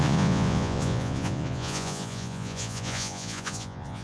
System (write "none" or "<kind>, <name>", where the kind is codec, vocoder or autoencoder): vocoder, Vocos